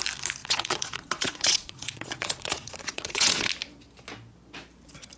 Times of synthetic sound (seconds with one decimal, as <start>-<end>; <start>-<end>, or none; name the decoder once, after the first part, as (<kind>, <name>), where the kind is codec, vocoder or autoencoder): 0.4-3.5 (vocoder, Vocos)